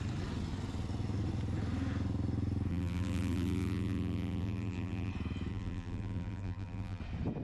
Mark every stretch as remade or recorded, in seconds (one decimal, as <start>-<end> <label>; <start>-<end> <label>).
0.0-2.7 recorded; 2.7-5.1 remade; 5.1-5.5 recorded; 5.5-7.0 remade; 7.0-7.4 recorded